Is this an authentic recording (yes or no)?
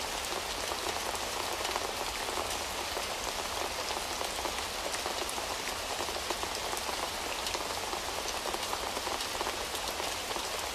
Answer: yes